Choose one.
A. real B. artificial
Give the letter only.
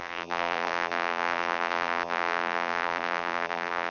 B